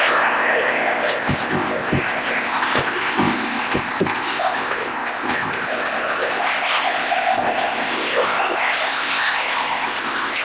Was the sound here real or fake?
fake